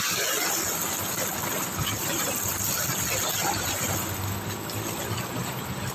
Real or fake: real